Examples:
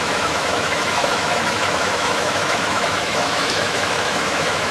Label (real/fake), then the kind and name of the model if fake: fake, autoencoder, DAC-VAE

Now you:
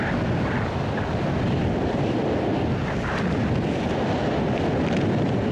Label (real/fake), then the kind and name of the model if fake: real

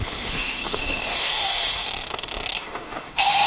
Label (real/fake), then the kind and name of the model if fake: fake, autoencoder, DAC-VAE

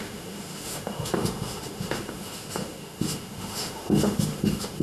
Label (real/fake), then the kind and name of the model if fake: fake, autoencoder, DAC-VAE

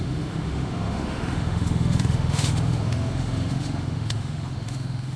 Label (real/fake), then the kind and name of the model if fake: fake, autoencoder, DAC-VAE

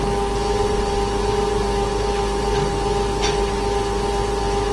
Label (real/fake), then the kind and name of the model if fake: real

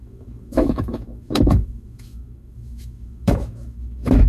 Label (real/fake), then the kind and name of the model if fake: fake, autoencoder, DAC-VAE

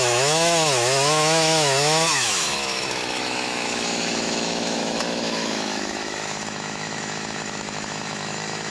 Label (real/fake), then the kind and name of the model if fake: fake, autoencoder, DAC-VAE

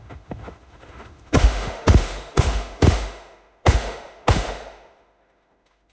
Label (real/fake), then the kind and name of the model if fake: fake, autoencoder, DAC-VAE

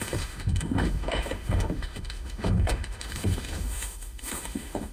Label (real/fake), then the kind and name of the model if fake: fake, autoencoder, DAC-VAE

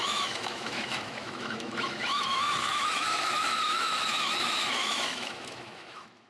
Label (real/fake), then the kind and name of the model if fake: fake, autoencoder, DAC-VAE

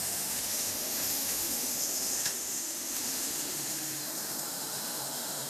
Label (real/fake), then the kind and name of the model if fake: fake, autoencoder, DAC-VAE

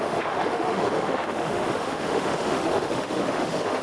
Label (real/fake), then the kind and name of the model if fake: fake, autoencoder, DAC-VAE